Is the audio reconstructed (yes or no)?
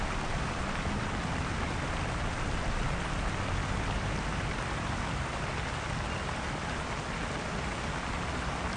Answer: no